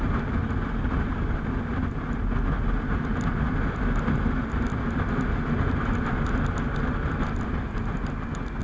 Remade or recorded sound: recorded